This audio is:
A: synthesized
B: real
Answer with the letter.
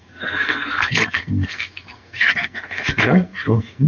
A